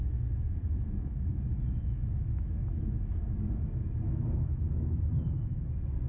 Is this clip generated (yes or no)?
yes